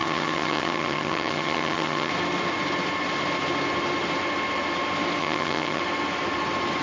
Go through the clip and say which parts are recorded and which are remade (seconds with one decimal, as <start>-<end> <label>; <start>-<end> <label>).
0.0-2.1 remade; 2.1-5.2 recorded; 5.2-5.8 remade; 5.8-6.8 recorded